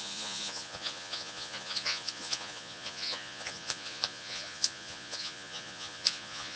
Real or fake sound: fake